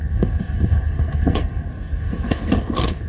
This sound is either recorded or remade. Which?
remade